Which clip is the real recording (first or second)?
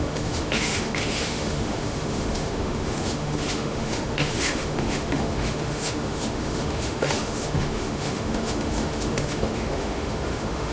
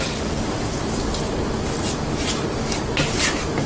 second